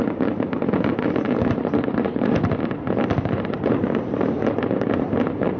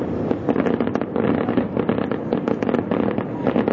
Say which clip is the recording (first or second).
second